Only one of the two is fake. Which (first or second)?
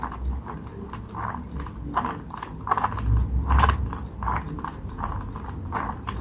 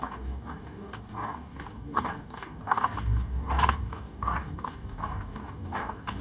second